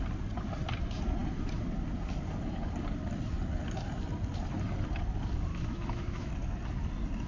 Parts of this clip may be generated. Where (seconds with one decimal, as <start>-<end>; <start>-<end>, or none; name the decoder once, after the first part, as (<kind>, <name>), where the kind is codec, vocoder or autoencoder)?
5.5-6.3 (autoencoder, DAC-VAE)